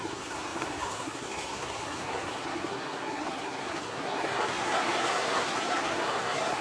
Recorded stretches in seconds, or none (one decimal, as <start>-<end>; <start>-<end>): none